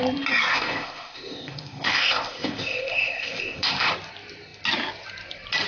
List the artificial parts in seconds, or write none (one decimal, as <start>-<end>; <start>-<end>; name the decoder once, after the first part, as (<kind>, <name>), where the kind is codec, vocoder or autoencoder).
0.5-3.9 (codec, ZipCodec)